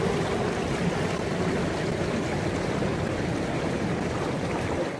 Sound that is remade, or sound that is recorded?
recorded